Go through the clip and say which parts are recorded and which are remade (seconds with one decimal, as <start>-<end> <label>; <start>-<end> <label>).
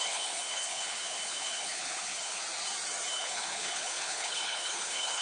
0.0-2.4 remade; 2.4-3.1 recorded; 3.1-5.2 remade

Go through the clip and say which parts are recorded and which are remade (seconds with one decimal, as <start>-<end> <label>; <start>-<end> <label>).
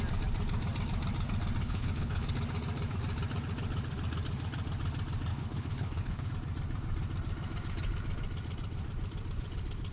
0.0-1.6 recorded; 1.6-2.3 remade; 2.3-5.3 recorded; 5.3-6.3 remade; 6.3-9.9 recorded